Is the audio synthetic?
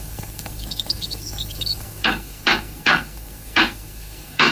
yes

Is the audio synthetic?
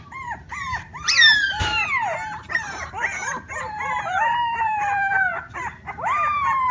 yes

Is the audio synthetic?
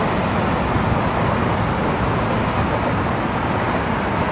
no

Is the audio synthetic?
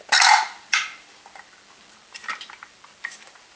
no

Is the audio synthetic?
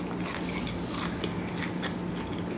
no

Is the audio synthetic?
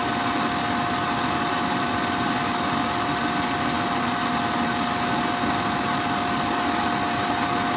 no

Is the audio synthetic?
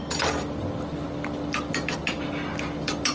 no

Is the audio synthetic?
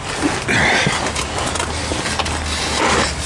no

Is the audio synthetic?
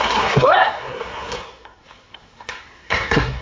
yes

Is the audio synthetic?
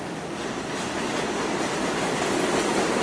no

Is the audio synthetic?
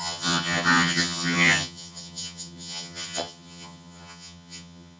yes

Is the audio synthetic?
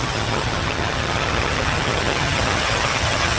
yes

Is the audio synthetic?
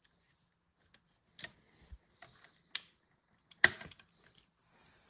no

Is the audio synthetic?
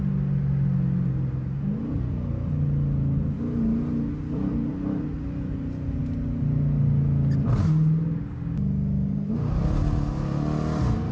no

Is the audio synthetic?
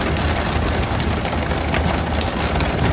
no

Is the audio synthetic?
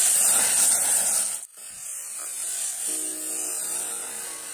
no